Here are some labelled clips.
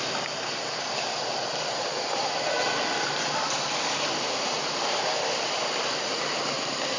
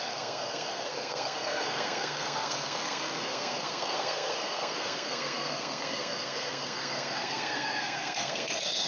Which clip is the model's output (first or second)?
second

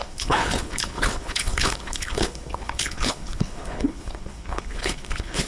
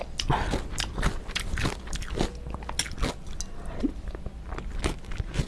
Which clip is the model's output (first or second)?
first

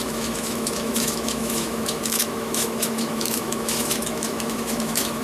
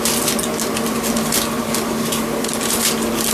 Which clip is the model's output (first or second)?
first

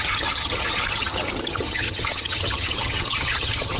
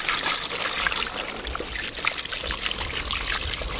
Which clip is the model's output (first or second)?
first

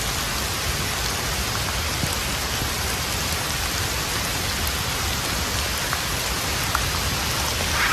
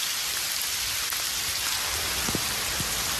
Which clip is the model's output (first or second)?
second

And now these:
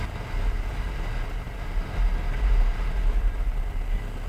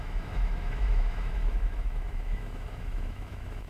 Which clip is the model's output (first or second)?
second